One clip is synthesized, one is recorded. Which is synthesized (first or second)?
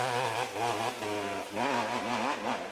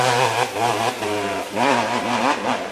second